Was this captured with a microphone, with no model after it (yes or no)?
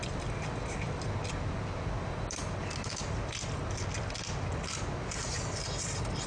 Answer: yes